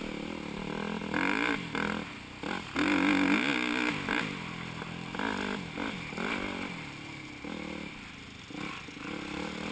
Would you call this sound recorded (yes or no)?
yes